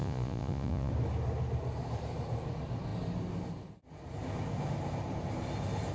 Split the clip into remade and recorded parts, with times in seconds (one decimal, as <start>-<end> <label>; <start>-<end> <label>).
0.0-0.9 remade; 0.9-5.9 recorded